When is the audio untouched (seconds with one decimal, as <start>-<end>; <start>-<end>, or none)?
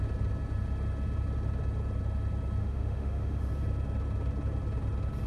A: 0.0-2.6; 3.5-5.3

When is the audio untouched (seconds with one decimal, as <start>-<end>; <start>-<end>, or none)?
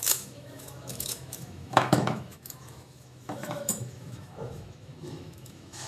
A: none